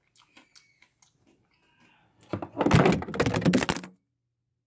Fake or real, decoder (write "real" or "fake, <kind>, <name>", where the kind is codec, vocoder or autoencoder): real